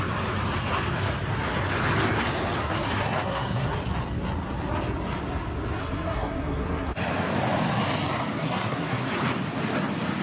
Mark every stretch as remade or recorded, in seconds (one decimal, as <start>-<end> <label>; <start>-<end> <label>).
0.0-2.6 recorded; 2.6-3.8 remade; 3.8-5.8 recorded; 5.8-6.9 remade; 6.9-8.4 recorded; 8.4-9.1 remade; 9.1-10.2 recorded